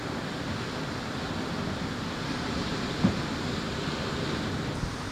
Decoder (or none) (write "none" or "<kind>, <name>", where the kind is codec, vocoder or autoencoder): none